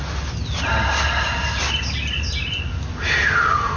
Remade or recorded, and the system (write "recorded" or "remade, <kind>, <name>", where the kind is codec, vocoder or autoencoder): recorded